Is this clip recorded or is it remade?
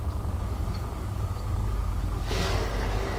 remade